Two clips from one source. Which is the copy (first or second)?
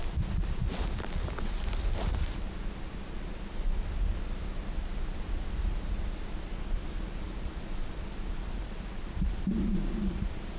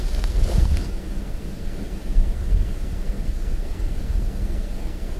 second